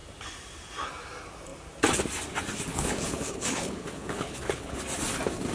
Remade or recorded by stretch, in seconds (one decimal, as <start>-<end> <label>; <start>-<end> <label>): 0.0-2.7 recorded; 2.7-4.8 remade; 4.8-5.5 recorded